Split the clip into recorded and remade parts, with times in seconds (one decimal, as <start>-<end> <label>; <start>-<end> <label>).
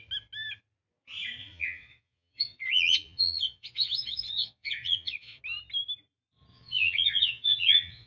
0.0-1.4 recorded; 1.4-5.4 remade; 5.4-6.5 recorded; 6.5-8.1 remade